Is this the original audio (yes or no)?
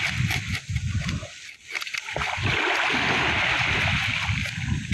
yes